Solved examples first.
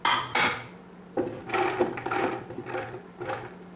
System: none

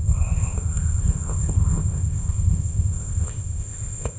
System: codec, ZipCodec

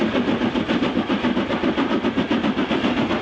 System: none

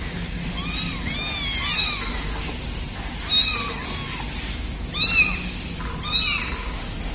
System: none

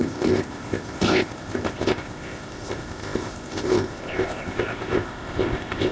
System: codec, ZipCodec